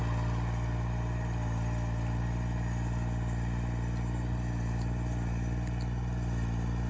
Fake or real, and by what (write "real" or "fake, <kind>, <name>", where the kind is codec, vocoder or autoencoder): real